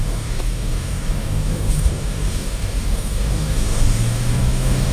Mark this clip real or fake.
fake